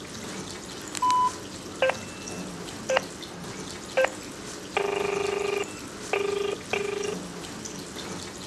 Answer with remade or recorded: recorded